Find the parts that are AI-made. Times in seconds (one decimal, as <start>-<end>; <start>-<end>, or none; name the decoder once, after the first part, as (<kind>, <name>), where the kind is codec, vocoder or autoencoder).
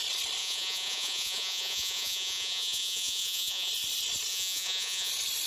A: 0.4-3.7 (vocoder, Vocos); 4.3-5.1